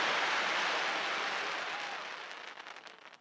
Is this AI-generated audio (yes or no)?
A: no